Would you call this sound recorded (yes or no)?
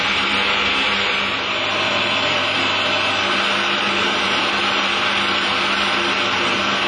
yes